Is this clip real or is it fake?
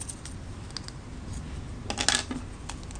real